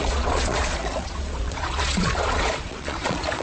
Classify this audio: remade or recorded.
remade